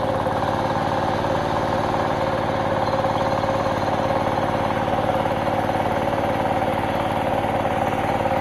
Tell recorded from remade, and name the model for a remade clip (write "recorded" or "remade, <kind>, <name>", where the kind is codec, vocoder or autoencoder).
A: recorded